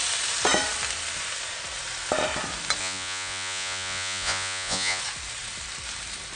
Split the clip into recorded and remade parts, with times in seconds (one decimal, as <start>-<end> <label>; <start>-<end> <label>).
0.0-2.8 recorded; 2.8-5.0 remade; 5.0-6.4 recorded